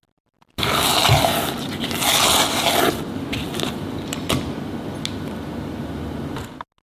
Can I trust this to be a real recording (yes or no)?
yes